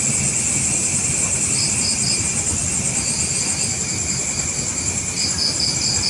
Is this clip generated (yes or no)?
no